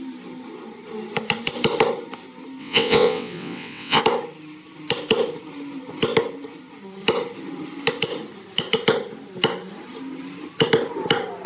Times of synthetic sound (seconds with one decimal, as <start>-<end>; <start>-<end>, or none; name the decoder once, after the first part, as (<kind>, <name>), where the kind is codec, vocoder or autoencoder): 2.6-4.0 (vocoder, WaveNeXt)